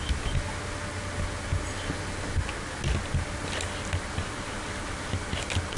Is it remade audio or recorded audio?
recorded